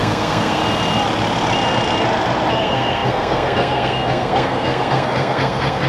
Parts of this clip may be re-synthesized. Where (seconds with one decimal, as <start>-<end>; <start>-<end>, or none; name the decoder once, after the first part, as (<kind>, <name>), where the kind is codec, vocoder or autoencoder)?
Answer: 0.0-0.6 (codec, SNAC); 2.5-5.9